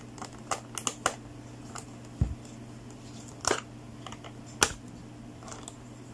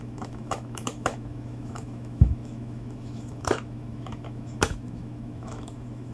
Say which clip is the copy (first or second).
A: second